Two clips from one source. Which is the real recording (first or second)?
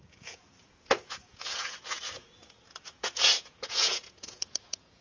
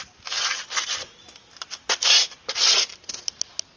second